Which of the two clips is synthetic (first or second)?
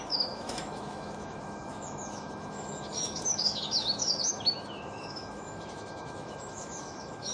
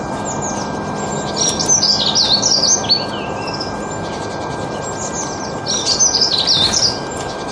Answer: first